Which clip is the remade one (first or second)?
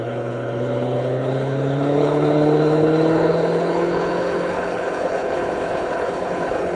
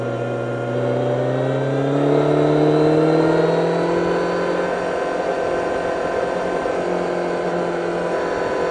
first